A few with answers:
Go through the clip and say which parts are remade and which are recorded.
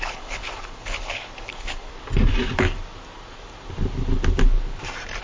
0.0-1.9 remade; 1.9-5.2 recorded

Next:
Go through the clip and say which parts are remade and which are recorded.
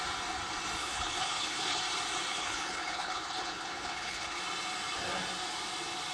0.0-0.8 recorded; 0.8-1.8 remade; 1.8-2.3 recorded; 2.3-4.4 remade; 4.4-6.1 recorded